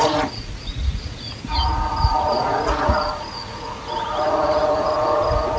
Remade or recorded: remade